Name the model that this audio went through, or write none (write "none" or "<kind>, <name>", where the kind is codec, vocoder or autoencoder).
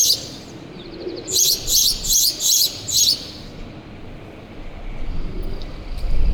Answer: none